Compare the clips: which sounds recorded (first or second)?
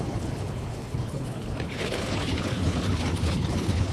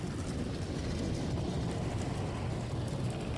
second